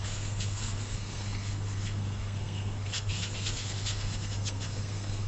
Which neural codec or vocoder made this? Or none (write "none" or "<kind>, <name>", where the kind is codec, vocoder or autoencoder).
codec, SNAC